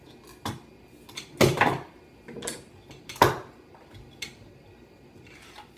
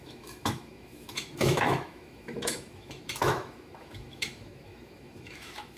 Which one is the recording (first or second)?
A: first